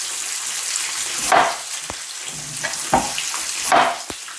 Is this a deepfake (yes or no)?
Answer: no